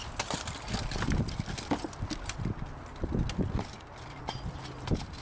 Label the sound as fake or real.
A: real